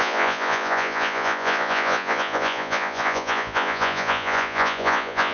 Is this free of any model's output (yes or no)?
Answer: no